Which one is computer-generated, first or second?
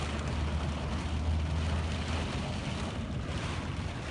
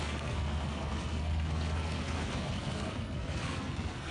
second